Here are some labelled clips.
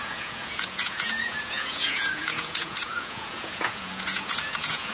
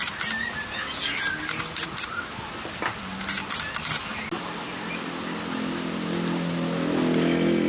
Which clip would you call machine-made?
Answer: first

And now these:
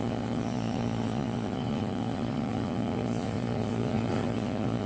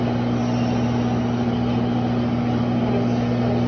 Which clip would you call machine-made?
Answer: first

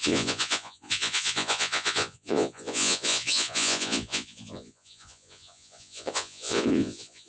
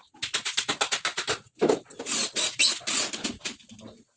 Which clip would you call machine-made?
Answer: first